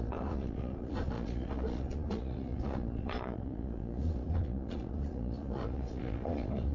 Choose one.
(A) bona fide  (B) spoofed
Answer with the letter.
B